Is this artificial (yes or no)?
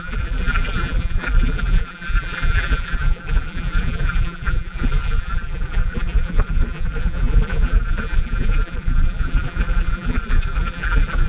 yes